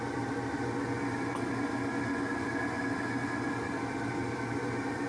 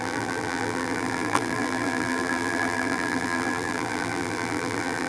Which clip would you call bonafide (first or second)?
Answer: first